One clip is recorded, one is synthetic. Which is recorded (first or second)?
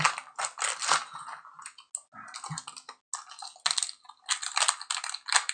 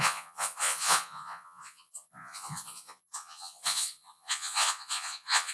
first